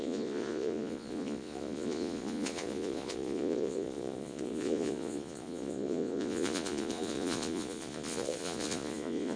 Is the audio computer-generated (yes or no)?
yes